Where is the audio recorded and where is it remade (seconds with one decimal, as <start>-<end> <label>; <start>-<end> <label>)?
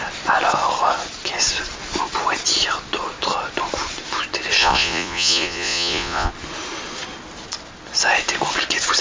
0.0-4.6 recorded; 4.6-6.3 remade; 6.3-9.0 recorded